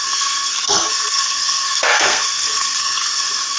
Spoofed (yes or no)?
yes